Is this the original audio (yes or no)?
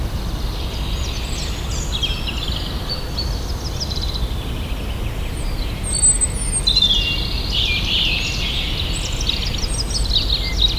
yes